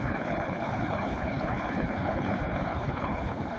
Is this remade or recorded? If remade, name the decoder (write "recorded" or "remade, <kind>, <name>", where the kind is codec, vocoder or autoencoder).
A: remade, codec, HILCodec